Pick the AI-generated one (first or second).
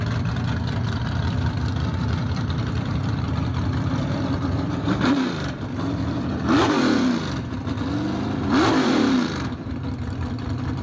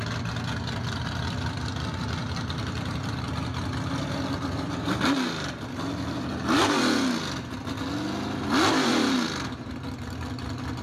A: first